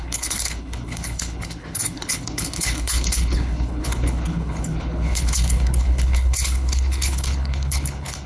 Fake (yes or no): yes